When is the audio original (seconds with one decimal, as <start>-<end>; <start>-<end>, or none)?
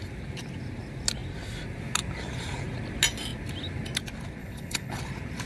0.0-4.4; 5.0-5.5